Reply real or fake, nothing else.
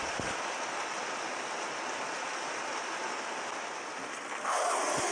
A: real